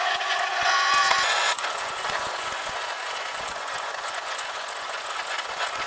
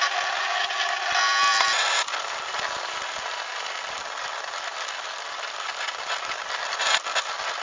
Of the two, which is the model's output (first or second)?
first